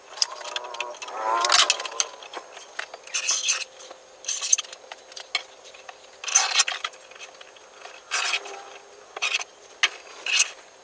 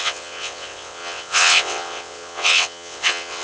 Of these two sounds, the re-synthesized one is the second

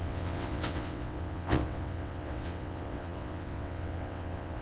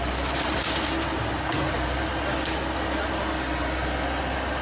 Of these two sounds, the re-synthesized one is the first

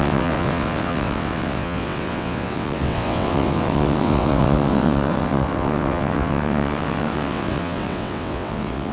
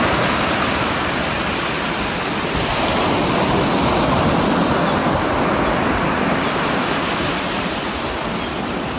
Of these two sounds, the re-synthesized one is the first